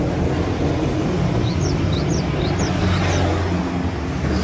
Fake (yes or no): no